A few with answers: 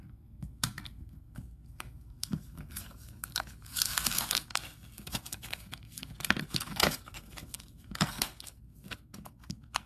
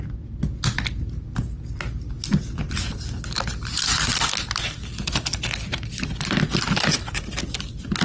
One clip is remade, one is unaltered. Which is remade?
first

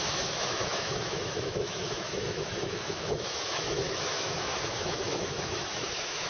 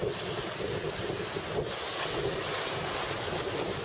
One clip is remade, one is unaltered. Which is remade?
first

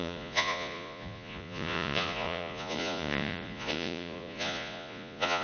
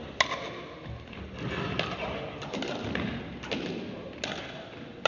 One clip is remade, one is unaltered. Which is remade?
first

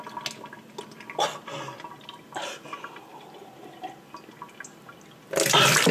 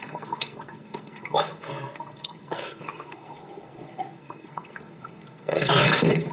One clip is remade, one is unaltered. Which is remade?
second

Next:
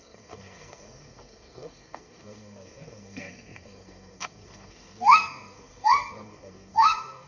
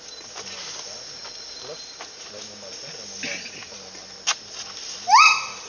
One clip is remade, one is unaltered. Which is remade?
first